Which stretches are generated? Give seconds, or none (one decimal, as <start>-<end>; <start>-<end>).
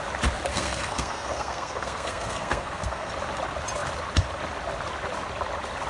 0.5-3.1